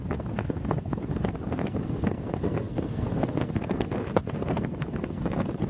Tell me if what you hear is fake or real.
fake